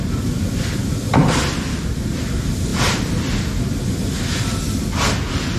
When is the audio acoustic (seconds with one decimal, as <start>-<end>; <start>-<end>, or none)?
0.0-5.6